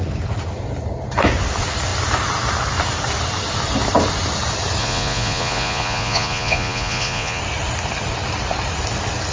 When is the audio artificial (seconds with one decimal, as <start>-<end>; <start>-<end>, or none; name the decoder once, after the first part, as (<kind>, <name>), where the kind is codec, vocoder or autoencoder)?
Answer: 4.8-7.4 (vocoder, Vocos)

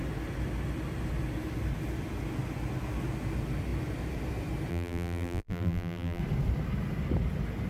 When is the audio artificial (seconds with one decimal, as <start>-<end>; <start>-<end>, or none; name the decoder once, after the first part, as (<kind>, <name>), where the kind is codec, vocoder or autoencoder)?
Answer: 4.7-6.2 (vocoder, BigVGAN v2)